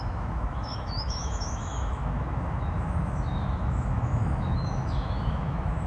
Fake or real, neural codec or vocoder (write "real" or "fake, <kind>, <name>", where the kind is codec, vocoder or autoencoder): fake, autoencoder, DAC-VAE